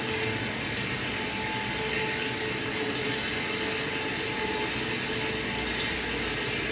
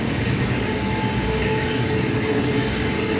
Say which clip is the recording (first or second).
first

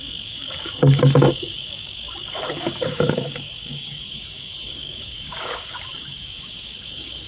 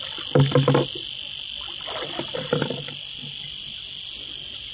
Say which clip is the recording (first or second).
second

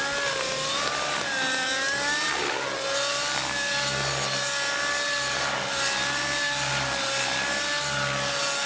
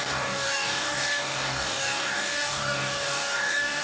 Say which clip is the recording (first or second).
first